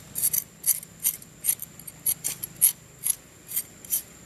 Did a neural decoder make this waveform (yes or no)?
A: no